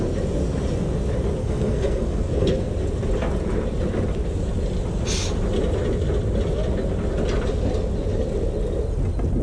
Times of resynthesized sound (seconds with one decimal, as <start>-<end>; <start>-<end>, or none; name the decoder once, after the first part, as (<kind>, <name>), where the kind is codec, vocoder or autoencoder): 1.4-2.7 (codec, SNAC)

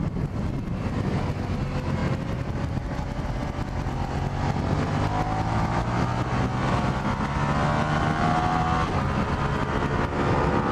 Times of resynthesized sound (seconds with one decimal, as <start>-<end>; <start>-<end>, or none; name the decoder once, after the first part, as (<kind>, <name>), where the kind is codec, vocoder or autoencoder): none

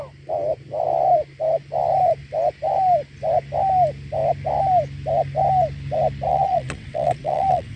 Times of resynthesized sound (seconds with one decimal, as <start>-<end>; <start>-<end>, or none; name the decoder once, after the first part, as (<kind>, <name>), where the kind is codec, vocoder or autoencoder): 6.3-7.8 (vocoder, WaveNeXt)

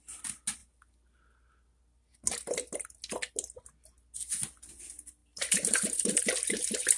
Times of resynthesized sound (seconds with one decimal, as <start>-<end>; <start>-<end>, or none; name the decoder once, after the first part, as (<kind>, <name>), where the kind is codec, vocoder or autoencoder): 5.2-6.2 (vocoder, BigVGAN v2)